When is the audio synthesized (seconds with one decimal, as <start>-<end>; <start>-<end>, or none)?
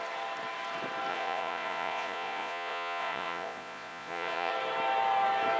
1.1-4.5